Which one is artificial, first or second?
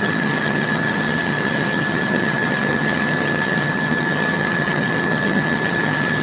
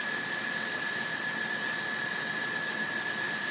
first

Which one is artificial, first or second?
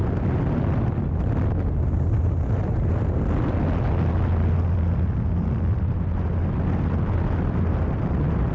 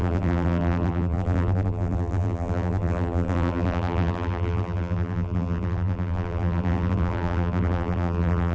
second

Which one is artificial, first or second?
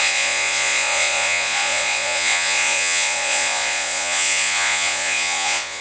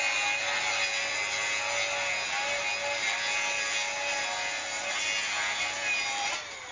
first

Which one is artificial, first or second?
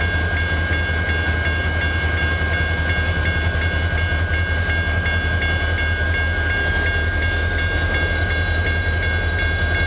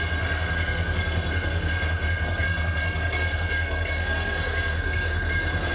second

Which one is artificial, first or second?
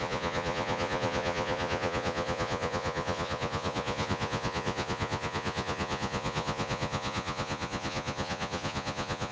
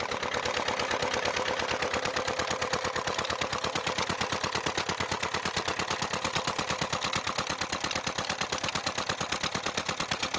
first